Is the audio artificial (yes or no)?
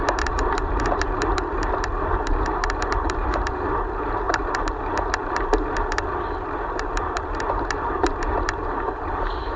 yes